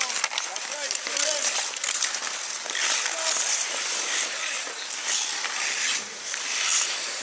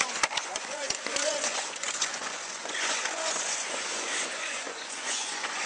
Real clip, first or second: first